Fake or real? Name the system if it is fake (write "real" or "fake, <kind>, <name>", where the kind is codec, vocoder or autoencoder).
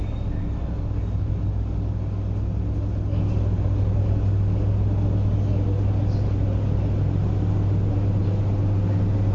real